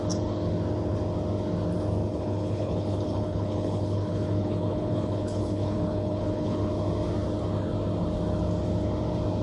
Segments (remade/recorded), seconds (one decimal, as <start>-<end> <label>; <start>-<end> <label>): 0.0-2.1 recorded; 2.1-6.7 remade; 6.7-9.4 recorded